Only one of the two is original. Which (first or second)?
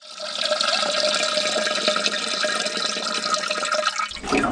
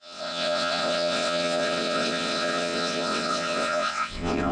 first